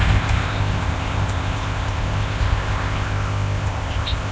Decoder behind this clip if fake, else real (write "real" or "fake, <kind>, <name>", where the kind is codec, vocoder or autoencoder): fake, codec, ZipCodec